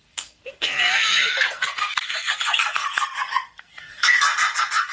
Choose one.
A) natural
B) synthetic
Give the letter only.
B